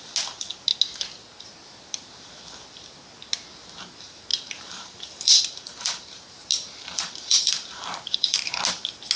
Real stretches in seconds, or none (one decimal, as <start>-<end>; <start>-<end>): 0.0-4.3; 6.1-6.5; 8.6-9.2